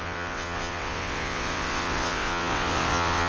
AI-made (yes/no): yes